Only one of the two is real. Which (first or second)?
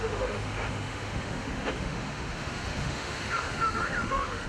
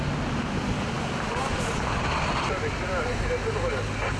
second